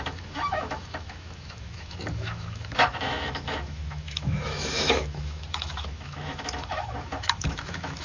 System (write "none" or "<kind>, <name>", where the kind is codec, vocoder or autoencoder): autoencoder, DAC-VAE